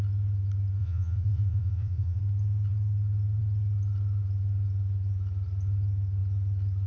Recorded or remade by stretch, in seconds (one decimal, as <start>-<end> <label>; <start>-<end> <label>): 0.0-0.8 recorded; 0.8-2.2 remade; 2.2-6.9 recorded